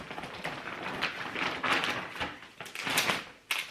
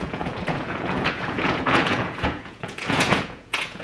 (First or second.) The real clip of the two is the first